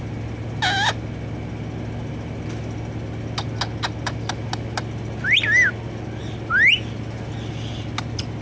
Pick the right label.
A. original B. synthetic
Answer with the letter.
A